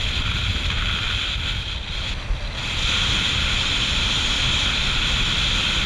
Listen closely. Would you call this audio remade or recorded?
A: recorded